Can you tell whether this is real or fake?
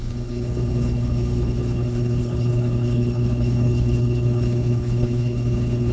fake